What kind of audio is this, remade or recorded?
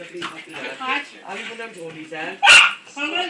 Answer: recorded